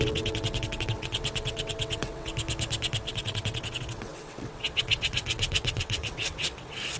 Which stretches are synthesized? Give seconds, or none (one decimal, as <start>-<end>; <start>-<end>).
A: 0.0-2.3; 3.1-7.0